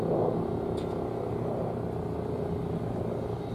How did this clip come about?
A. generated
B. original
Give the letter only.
B